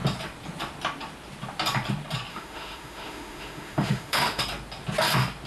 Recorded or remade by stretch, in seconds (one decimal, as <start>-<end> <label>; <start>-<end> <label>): 0.0-2.3 recorded; 2.3-4.4 remade; 4.4-5.5 recorded